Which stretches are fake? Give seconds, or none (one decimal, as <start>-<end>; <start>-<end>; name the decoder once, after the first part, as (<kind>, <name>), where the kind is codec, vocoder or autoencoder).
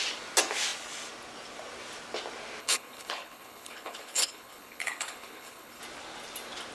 2.6-5.8 (codec, HILCodec)